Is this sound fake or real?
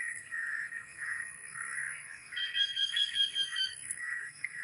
fake